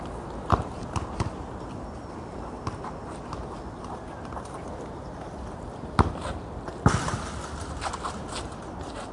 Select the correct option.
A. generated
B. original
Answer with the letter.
B